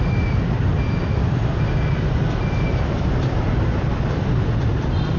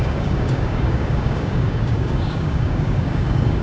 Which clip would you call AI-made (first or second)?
second